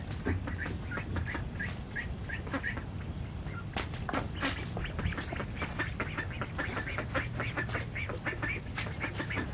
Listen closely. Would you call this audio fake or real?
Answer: real